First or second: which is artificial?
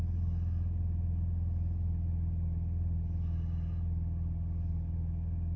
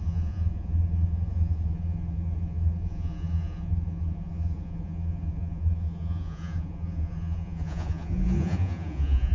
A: second